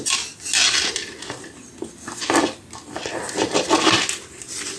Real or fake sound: real